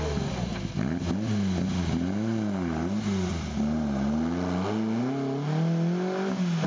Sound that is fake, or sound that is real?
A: real